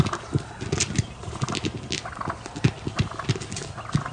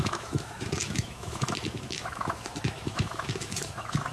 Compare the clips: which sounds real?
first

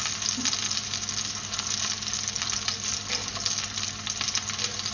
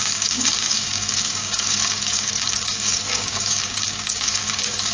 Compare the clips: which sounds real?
first